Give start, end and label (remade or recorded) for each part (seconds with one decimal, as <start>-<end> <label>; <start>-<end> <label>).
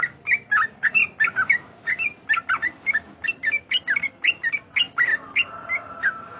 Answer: 0.0-6.4 recorded